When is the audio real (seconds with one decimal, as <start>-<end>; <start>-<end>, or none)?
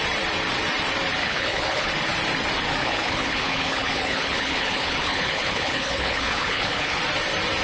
0.0-1.2; 1.9-2.8; 7.0-7.6